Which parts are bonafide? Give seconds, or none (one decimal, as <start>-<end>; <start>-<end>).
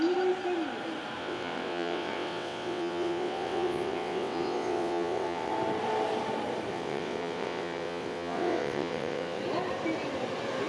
0.0-1.2; 5.5-6.7; 9.4-10.7